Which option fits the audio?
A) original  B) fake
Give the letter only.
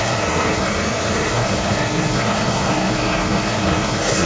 B